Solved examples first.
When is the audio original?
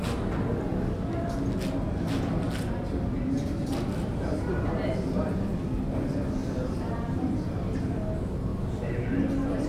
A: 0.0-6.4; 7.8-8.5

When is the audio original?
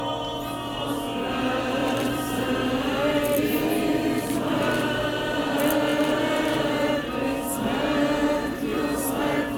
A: 0.0-1.8; 2.5-3.9; 5.5-8.7; 9.2-9.6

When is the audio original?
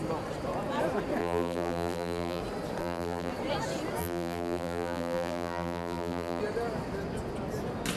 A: 0.0-1.2; 2.4-2.8; 3.3-4.0; 6.4-8.0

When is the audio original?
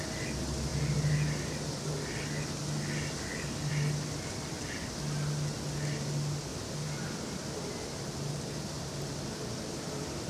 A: 0.0-6.5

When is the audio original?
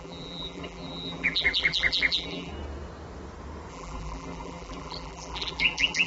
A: 2.5-3.7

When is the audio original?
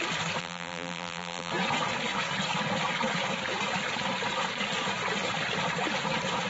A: 0.0-0.4; 1.5-6.5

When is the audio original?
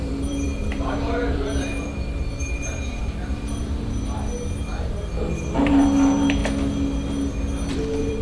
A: 6.4-7.7